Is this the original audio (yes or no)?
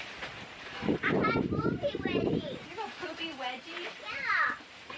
no